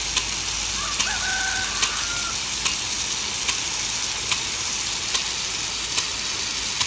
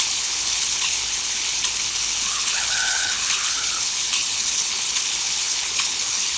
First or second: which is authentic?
first